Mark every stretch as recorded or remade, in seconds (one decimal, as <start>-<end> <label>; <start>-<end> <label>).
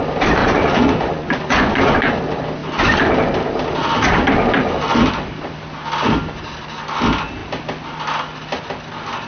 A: 0.0-0.4 recorded; 0.4-2.2 remade; 2.2-9.3 recorded